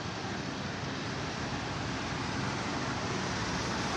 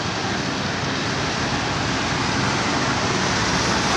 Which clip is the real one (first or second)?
second